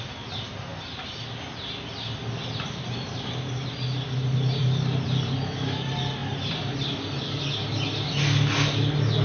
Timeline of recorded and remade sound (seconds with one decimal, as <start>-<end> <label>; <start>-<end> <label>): 0.0-9.2 recorded